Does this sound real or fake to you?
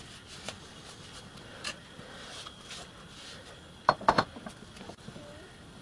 real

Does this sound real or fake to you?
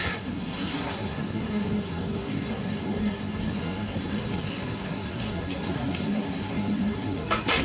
fake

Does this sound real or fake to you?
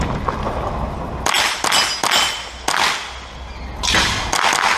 real